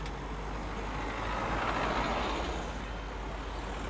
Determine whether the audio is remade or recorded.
recorded